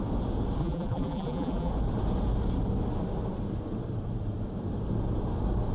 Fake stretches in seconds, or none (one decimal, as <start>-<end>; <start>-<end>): 0.6-1.7

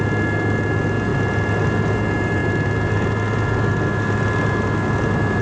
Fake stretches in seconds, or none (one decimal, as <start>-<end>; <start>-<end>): none

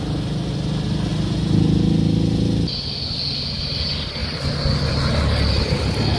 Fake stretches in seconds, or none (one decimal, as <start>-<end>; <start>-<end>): none

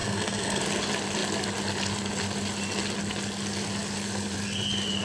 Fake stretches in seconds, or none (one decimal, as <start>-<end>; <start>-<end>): 0.0-0.6

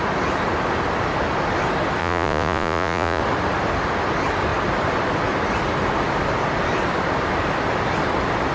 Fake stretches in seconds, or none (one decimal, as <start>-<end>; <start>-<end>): 2.0-3.2

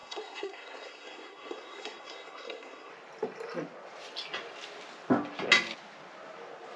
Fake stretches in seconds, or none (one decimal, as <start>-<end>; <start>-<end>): 0.0-2.9